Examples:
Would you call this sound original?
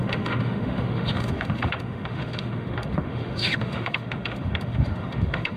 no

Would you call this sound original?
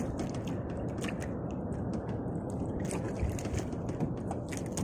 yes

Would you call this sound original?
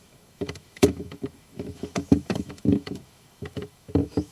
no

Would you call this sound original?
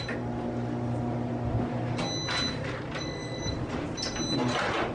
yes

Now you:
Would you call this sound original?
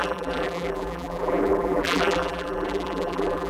no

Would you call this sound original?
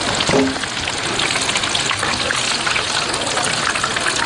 yes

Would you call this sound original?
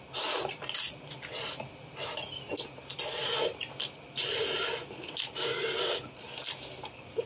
yes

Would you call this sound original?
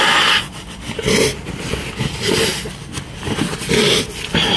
yes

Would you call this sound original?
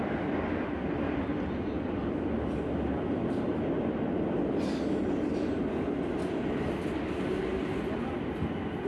yes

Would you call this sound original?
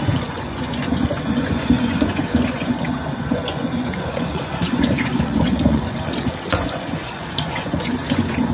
no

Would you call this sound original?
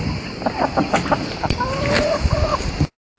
yes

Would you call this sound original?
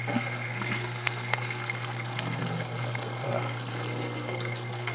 no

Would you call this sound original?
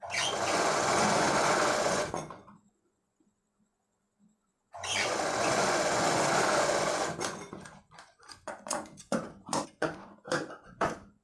no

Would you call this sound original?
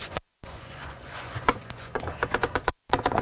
no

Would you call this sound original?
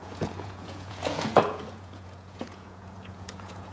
no